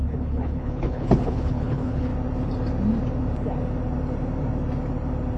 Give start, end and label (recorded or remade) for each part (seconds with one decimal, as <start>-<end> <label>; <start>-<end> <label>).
0.0-2.1 remade; 2.1-5.4 recorded